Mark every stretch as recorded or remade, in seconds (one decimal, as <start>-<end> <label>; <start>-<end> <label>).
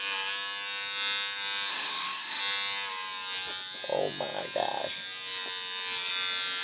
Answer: 0.0-1.7 recorded; 1.7-2.4 remade; 2.4-6.6 recorded